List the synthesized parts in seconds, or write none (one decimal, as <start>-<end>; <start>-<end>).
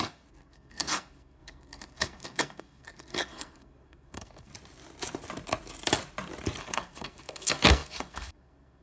0.0-4.5; 6.6-8.8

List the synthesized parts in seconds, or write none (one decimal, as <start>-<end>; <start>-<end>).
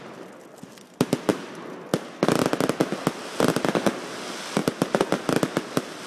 none